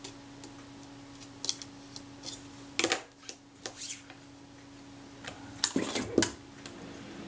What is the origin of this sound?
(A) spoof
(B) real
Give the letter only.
B